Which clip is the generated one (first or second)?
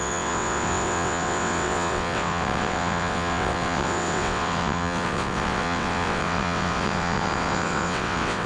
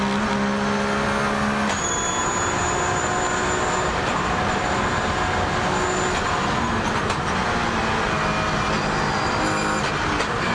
first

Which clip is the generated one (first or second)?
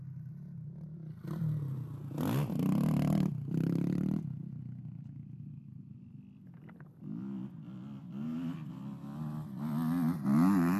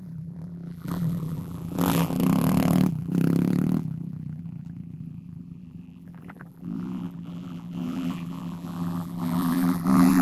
second